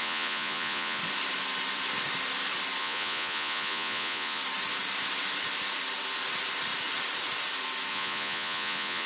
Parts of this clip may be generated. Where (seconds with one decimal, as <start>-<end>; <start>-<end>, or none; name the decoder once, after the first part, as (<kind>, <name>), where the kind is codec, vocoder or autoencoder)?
0.0-1.0 (vocoder, Vocos); 2.8-4.4; 7.9-9.1